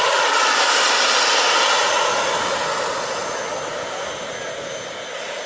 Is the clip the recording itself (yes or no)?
yes